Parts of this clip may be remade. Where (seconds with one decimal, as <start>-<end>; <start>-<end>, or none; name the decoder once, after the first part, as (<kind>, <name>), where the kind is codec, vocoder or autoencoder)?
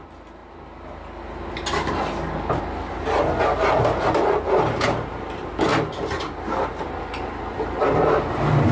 none